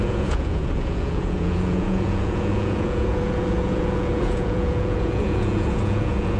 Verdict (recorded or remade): remade